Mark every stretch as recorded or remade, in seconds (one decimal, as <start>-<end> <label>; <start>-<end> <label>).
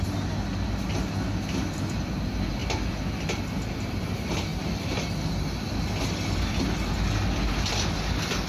0.0-8.5 recorded